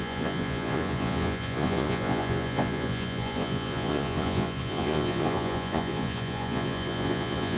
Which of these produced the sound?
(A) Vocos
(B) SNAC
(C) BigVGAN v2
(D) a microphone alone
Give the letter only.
A